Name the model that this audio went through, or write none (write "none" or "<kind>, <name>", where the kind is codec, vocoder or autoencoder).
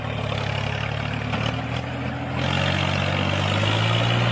none